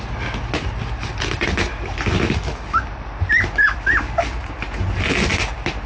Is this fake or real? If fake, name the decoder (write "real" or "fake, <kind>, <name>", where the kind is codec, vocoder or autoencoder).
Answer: real